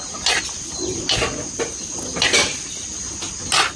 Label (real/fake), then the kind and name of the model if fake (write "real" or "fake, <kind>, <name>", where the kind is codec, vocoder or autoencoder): real